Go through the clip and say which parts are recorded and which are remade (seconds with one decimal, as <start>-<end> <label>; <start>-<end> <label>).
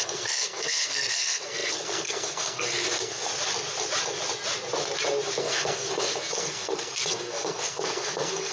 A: 0.0-3.3 remade; 3.3-5.4 recorded; 5.4-8.5 remade